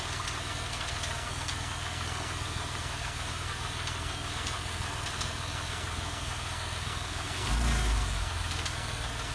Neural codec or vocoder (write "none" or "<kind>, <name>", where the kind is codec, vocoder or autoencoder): codec, SNAC